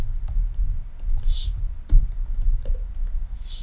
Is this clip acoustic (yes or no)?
no